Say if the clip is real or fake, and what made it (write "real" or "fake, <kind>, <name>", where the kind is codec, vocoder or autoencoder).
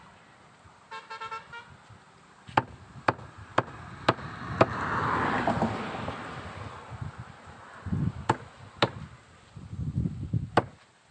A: real